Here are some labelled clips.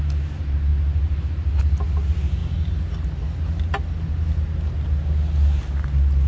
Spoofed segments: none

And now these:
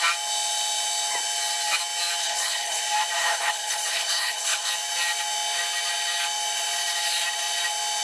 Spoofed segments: 2.2-2.8 (codec, HILCodec); 3.2-4.7

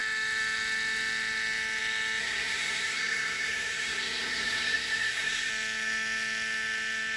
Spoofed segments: 2.2-5.5 (codec, SNAC)

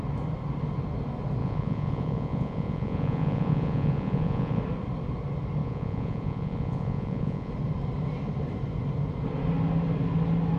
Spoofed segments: 1.4-4.6 (vocoder, Vocos); 5.6-7.5

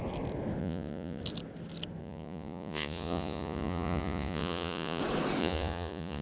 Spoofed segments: 0.6-1.2 (vocoder, Vocos); 2.0-5.0; 5.4-6.2

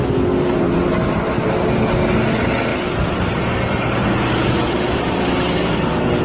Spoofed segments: none

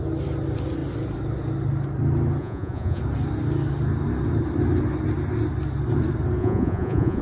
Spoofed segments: 2.4-3.0 (vocoder, Vocos); 6.4-7.2